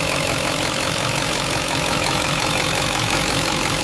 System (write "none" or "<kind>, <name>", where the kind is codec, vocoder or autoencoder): autoencoder, DAC-VAE